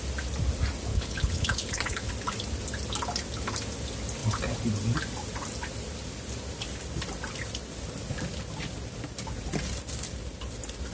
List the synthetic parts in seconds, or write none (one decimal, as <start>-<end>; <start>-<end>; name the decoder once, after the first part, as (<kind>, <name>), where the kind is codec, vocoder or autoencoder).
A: 0.9-2.1 (codec, HILCodec)